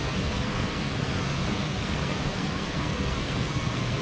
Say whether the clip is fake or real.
fake